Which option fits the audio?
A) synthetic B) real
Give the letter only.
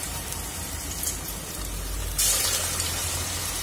A